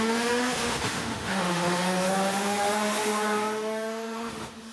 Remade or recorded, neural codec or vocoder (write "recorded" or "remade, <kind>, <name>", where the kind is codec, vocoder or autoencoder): remade, autoencoder, DAC-VAE